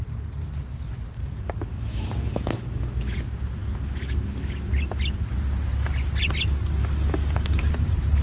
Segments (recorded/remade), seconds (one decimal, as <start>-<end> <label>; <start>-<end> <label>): 0.0-1.2 recorded; 1.2-3.2 remade; 3.2-3.6 recorded; 3.6-4.7 remade; 4.7-6.8 recorded; 6.8-7.7 remade; 7.7-8.2 recorded